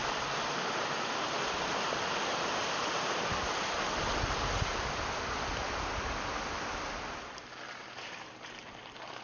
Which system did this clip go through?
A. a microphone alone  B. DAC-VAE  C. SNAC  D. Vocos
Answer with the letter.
A